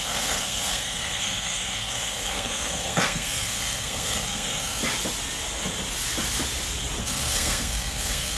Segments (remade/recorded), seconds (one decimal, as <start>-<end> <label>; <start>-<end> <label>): 0.0-4.8 remade; 4.8-7.0 recorded; 7.0-8.4 remade